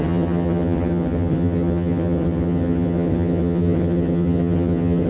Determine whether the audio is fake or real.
fake